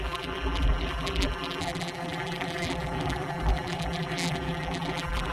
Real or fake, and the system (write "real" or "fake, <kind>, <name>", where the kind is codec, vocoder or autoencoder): fake, vocoder, BigVGAN v2